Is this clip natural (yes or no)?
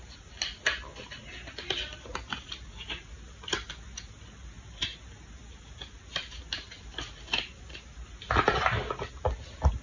yes